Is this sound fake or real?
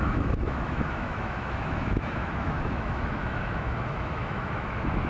fake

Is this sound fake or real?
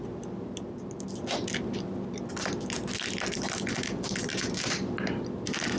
real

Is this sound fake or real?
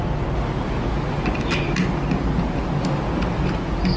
real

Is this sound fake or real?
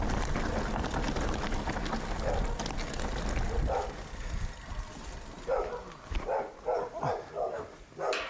real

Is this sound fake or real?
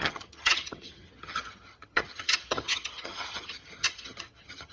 fake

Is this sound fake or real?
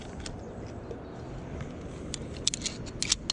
real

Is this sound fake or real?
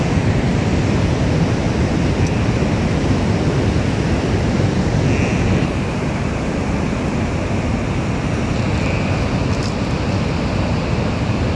real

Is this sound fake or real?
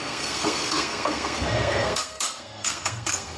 fake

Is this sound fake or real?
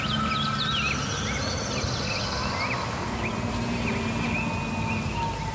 real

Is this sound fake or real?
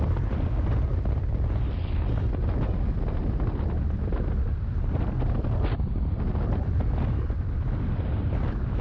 real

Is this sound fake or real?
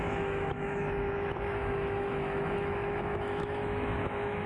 fake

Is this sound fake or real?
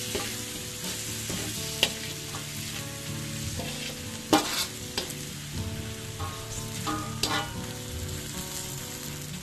real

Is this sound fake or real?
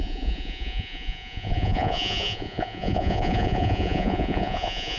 fake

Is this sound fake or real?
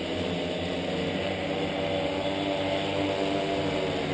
real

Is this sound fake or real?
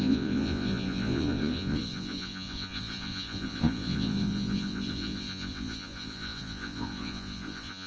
fake